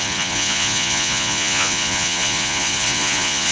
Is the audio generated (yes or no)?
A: yes